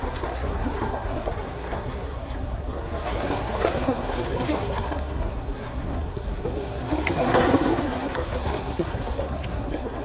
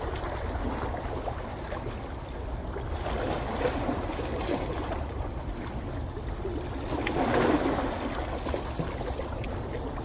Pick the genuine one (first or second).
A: second